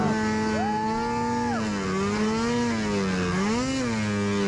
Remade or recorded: recorded